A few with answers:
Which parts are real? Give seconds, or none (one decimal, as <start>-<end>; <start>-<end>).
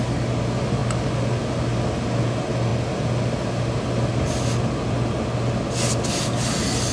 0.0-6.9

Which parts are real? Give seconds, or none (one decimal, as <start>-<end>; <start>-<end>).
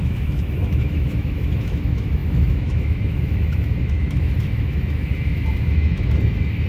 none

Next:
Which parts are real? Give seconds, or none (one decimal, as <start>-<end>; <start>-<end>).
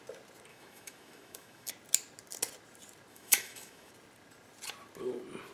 0.0-0.5; 1.7-3.1; 3.9-5.5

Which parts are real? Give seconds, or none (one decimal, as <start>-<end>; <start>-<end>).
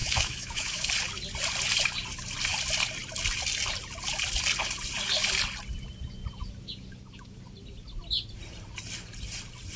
0.9-9.8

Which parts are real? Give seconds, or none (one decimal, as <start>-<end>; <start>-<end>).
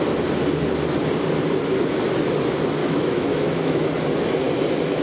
0.0-2.8; 3.9-5.0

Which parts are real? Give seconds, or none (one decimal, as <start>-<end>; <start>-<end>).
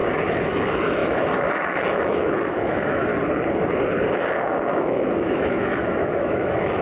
0.0-0.5; 3.1-4.5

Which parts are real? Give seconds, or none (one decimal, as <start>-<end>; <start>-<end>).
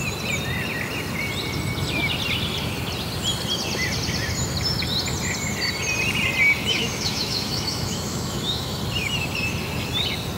0.0-6.6; 8.8-10.4